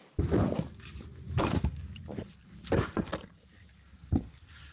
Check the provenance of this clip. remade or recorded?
recorded